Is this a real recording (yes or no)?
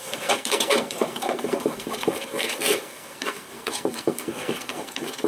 no